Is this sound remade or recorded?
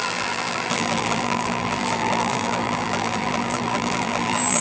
remade